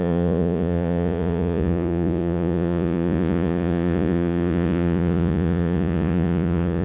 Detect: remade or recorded remade